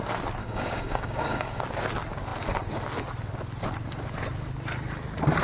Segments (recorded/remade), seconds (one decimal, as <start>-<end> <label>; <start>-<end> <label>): 0.0-0.4 recorded; 0.4-1.6 remade; 1.6-5.4 recorded

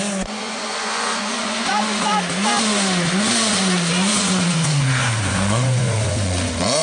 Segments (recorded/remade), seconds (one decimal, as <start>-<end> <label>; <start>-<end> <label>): 0.0-2.1 remade; 2.1-3.5 recorded; 3.5-6.8 remade